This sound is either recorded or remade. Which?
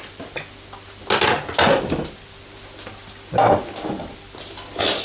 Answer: recorded